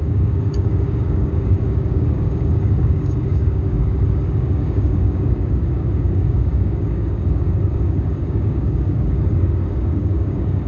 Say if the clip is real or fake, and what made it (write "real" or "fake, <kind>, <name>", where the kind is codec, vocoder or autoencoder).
fake, codec, DAC